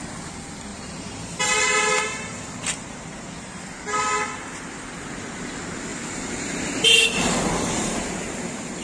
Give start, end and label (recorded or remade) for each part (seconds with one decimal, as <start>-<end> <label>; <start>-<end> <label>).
0.0-0.7 recorded; 0.7-4.0 remade; 4.0-5.9 recorded; 5.9-8.0 remade; 8.0-8.8 recorded